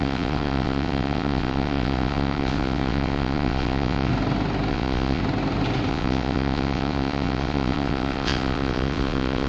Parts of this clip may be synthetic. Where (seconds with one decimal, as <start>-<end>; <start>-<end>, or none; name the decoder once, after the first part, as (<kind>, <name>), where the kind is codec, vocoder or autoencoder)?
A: 0.0-4.1 (vocoder, WaveNeXt); 4.7-5.2; 5.9-9.5